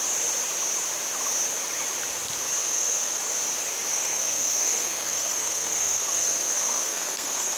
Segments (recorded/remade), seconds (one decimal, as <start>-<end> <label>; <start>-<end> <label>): 0.0-2.6 recorded; 2.6-3.2 remade; 3.2-3.9 recorded; 3.9-7.6 remade